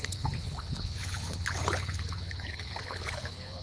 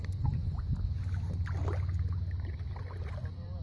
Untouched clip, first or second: second